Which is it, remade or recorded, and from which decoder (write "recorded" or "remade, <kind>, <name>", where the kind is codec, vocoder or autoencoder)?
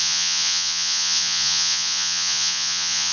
remade, vocoder, Vocos